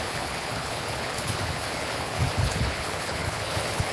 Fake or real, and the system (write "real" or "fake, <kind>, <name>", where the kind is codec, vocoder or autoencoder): fake, codec, HILCodec